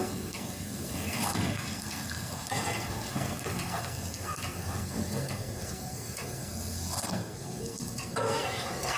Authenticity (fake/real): fake